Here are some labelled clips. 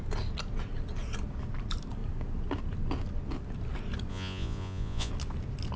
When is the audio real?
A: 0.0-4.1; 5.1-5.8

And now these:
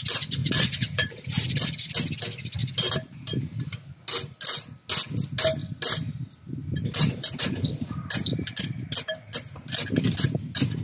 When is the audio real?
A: 0.0-0.4; 1.2-10.8

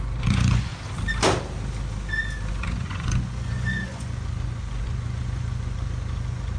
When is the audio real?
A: 0.7-2.5

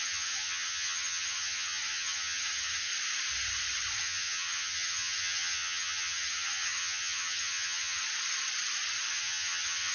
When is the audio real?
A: 2.9-4.0; 8.0-9.1

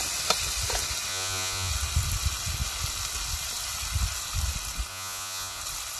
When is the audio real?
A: 0.0-1.1; 1.7-4.9; 5.6-6.0

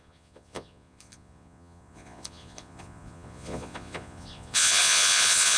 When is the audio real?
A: none